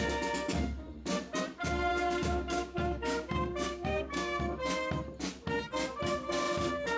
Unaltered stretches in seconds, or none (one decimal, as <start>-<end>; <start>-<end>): 0.0-1.9; 4.4-7.0